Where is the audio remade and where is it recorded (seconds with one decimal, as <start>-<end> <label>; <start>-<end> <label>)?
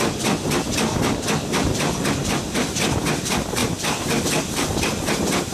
0.0-5.5 recorded